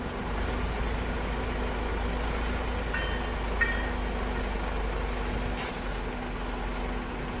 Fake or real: real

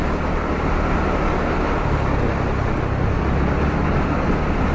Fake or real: real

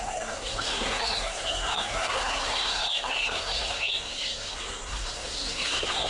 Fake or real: fake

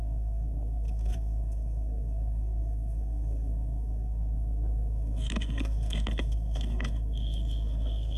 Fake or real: fake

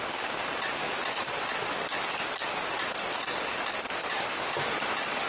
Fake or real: real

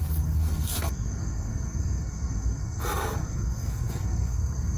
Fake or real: fake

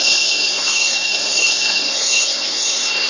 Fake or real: fake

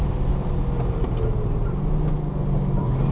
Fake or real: real